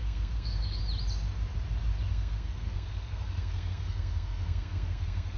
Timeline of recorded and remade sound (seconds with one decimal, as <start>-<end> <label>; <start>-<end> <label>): 0.0-0.8 remade; 0.8-2.1 recorded; 2.1-5.4 remade

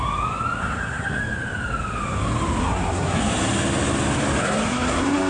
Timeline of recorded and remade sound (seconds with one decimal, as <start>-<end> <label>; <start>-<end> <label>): 0.0-0.6 recorded; 0.6-1.2 remade; 1.2-2.6 recorded; 2.6-3.2 remade; 3.2-4.4 recorded; 4.4-5.3 remade

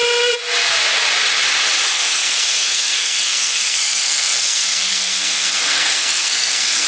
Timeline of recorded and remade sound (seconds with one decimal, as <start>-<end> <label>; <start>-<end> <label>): 0.0-1.9 recorded; 1.9-6.9 remade

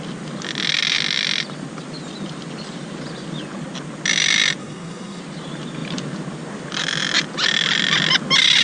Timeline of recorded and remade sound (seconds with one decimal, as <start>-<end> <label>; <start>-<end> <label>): 0.0-4.6 recorded; 4.6-5.2 remade; 5.2-8.6 recorded